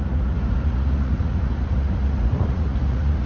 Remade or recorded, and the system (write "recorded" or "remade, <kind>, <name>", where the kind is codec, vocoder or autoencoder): remade, vocoder, Vocos